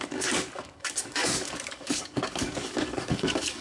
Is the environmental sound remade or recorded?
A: remade